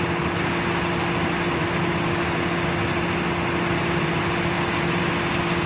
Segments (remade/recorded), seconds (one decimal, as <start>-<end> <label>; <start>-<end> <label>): 0.0-5.7 recorded